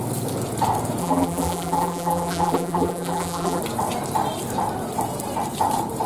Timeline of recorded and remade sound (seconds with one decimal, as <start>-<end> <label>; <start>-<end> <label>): 0.0-1.0 recorded; 1.0-3.6 remade; 3.6-6.1 recorded